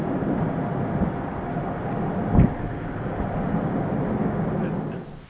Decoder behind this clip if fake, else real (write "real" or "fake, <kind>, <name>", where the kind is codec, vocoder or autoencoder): real